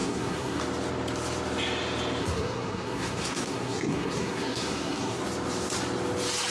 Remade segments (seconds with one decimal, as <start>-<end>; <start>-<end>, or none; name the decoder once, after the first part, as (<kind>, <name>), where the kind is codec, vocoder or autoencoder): 0.0-0.6 (codec, SNAC); 2.2-5.2